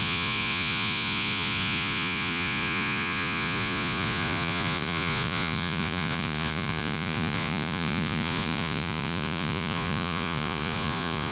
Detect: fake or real fake